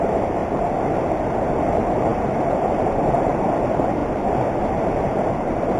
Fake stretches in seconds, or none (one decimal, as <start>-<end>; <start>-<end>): 0.0-0.4; 1.6-4.0; 4.6-5.8